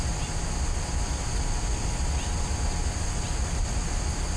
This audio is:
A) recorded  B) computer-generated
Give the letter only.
A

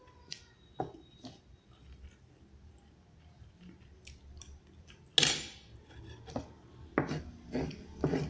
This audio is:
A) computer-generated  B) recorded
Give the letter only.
B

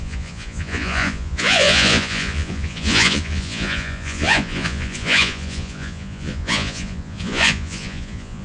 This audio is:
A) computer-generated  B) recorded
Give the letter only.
A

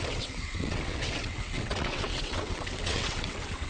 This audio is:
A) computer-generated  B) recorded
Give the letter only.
A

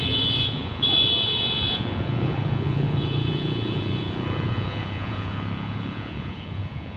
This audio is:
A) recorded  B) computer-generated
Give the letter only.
B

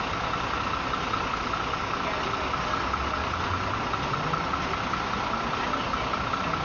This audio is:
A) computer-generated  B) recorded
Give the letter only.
B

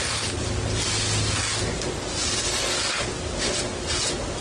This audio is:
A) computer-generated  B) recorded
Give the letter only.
B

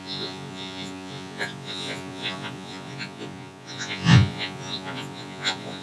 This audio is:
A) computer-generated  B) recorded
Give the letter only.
A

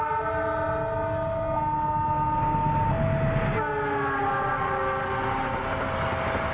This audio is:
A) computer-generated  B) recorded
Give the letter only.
B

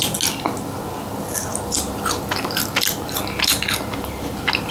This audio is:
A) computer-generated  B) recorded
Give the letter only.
B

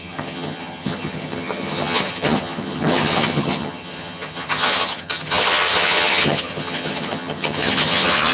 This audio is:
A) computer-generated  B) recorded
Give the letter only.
A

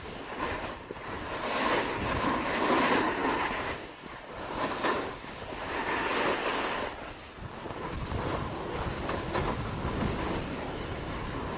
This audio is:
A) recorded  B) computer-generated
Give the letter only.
A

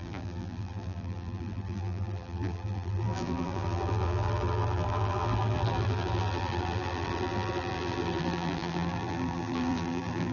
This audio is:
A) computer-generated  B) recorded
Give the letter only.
A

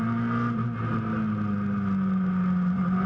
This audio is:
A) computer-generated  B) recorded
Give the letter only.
B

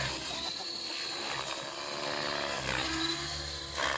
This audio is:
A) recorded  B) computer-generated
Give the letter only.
A